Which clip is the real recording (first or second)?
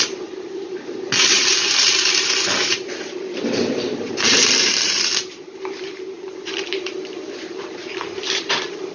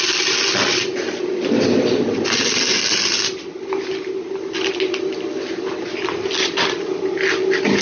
second